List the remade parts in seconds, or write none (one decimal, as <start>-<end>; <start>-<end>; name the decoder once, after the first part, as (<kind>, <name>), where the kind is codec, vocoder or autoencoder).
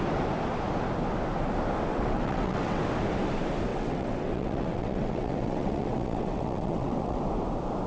1.9-2.8 (vocoder, WaveNeXt); 3.7-7.2